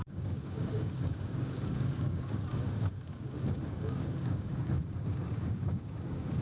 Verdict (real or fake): fake